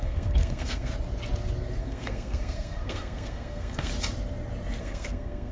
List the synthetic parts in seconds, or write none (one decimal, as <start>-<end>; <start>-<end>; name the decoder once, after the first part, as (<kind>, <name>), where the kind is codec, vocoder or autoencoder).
0.0-0.9 (codec, SNAC); 1.8-3.9; 4.8-5.5